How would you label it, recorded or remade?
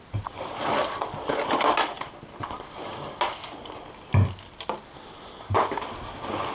recorded